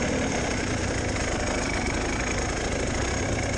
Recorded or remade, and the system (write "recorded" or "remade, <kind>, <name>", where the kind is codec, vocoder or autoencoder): recorded